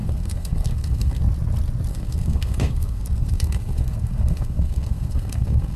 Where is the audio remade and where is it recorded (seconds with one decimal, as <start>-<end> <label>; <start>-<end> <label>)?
0.0-1.2 remade; 1.2-1.9 recorded; 1.9-5.8 remade